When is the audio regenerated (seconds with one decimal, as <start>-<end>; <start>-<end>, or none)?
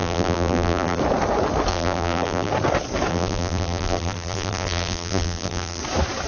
0.0-1.0; 1.7-2.5; 3.1-5.8